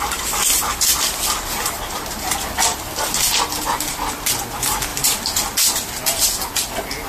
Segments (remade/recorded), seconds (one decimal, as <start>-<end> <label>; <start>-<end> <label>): 0.0-7.1 recorded